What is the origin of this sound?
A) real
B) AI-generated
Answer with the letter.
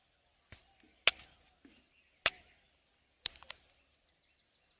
A